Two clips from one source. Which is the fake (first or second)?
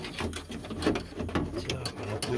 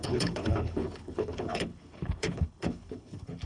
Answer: second